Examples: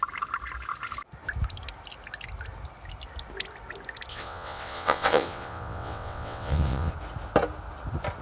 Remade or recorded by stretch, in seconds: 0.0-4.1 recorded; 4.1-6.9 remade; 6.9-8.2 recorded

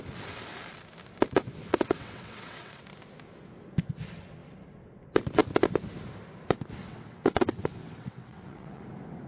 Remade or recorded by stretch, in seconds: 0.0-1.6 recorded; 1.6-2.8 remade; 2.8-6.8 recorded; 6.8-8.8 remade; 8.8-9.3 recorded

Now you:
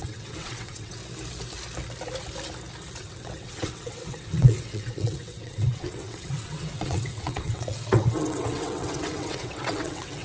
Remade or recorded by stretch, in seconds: 0.0-1.0 remade; 1.0-3.0 recorded; 3.0-10.2 remade

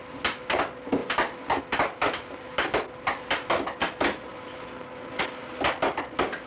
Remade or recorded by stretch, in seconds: 0.0-6.5 recorded